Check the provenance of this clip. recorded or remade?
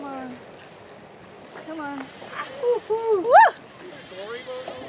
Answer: recorded